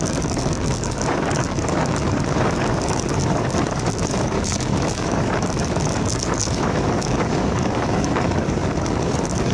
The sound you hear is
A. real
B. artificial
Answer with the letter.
B